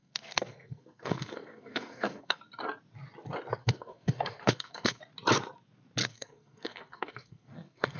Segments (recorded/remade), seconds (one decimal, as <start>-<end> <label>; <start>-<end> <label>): 0.0-2.4 remade; 2.4-3.6 recorded; 3.6-5.0 remade; 5.0-6.0 recorded; 6.0-8.0 remade